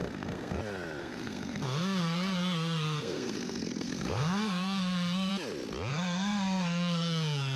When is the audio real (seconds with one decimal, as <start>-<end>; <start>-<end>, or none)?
0.6-1.0; 5.3-5.9